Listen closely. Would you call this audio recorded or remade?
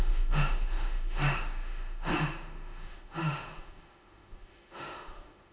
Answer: remade